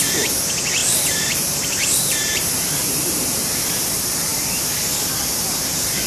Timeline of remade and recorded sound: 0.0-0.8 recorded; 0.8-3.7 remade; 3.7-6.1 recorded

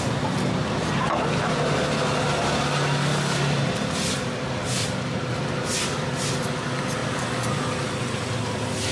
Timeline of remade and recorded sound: 0.0-3.1 recorded; 3.1-6.1 remade; 6.1-8.9 recorded